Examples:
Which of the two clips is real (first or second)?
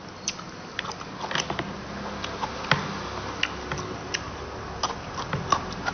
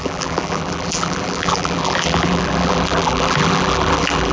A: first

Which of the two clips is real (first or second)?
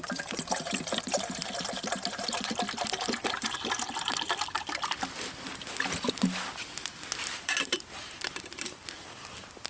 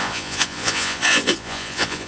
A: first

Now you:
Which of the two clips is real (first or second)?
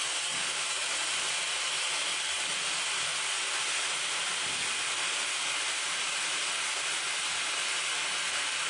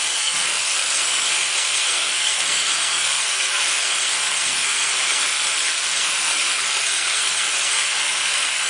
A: first